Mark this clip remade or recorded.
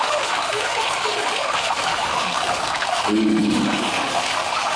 remade